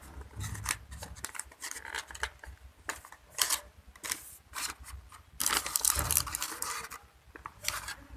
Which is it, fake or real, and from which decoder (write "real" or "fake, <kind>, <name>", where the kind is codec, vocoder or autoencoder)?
fake, vocoder, BigVGAN v2